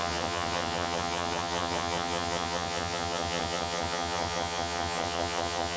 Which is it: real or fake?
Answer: fake